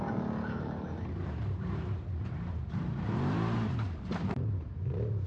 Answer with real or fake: fake